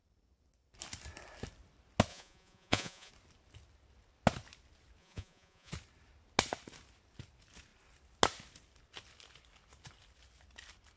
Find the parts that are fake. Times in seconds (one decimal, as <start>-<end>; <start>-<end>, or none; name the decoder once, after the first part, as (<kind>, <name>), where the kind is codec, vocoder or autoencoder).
2.1-3.1 (vocoder, Vocos); 5.0-5.7